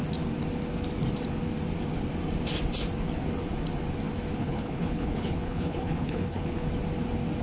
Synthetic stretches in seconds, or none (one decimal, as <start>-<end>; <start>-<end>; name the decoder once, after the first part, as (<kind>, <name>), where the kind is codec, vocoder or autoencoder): 4.4-6.7 (codec, HILCodec)